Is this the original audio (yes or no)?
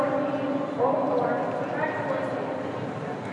yes